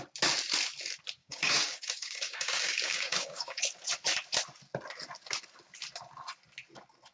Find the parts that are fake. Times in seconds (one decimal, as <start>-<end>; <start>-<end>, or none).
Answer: 1.2-3.6